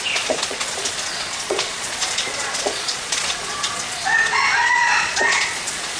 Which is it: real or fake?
fake